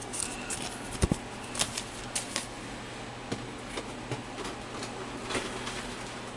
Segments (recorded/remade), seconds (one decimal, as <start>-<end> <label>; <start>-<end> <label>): 0.0-6.4 recorded